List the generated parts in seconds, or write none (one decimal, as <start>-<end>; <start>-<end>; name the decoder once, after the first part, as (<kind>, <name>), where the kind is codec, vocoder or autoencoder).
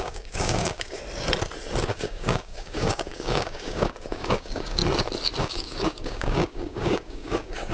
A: 0.0-1.0 (codec, DAC); 1.8-4.8; 5.4-7.7